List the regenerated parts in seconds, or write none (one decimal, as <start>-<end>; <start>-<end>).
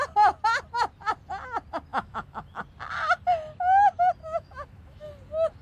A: 1.9-2.6; 4.2-5.1